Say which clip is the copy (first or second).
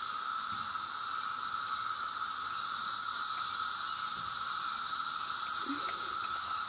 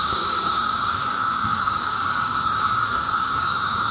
second